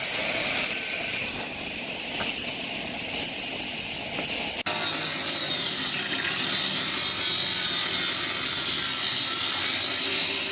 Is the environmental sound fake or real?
real